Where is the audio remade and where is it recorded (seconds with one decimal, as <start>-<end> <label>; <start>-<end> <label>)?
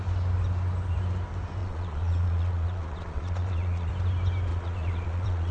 0.0-1.6 recorded; 1.6-3.9 remade; 3.9-4.5 recorded; 4.5-5.5 remade